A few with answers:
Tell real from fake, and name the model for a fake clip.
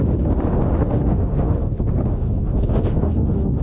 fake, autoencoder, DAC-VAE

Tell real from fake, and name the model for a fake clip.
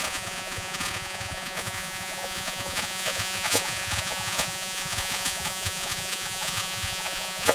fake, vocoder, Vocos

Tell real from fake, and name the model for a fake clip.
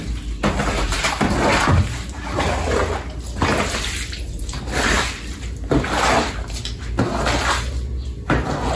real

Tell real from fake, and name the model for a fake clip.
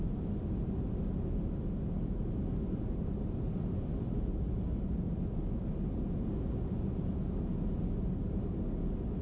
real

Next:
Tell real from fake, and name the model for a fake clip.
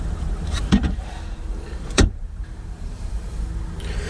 fake, vocoder, BigVGAN v2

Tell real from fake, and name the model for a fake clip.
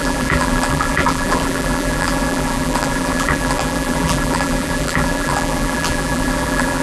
fake, vocoder, BigVGAN v2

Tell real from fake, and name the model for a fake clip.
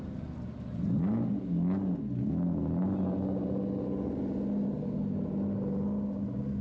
real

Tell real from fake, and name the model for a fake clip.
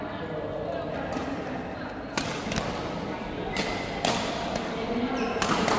real